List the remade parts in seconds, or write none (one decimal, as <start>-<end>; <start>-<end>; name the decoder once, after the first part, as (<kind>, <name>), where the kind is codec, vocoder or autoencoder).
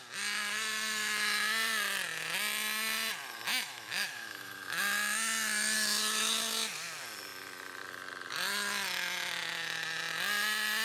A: 3.5-4.8 (autoencoder, DAC-VAE)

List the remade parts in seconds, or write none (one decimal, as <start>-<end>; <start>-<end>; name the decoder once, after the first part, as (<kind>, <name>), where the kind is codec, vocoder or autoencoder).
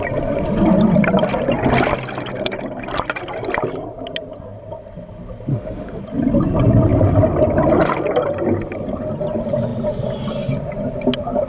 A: 5.5-6.0 (autoencoder, DAC-VAE)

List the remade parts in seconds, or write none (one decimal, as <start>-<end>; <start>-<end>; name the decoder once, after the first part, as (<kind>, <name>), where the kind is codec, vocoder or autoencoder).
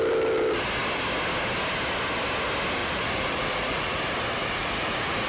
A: 2.8-4.0 (vocoder, Vocos); 4.4-5.3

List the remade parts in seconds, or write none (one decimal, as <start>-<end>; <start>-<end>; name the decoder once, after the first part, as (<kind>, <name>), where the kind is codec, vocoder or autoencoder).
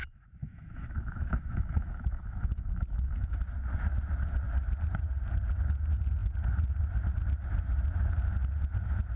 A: 0.4-3.4 (autoencoder, DAC-VAE)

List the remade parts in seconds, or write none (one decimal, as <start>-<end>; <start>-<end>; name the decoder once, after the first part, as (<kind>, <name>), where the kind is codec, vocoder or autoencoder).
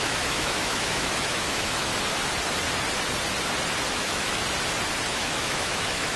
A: 0.0-1.9 (autoencoder, DAC-VAE); 3.9-4.4; 5.1-6.2